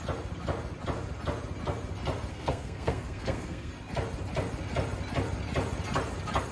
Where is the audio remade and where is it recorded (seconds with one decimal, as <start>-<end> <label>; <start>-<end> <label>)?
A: 0.0-2.3 recorded; 2.3-3.7 remade; 3.7-6.5 recorded